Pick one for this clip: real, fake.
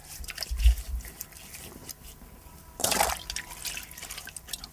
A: real